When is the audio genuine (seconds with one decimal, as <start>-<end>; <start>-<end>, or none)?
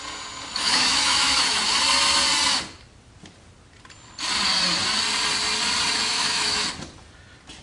0.0-0.5; 1.6-6.1; 6.7-7.6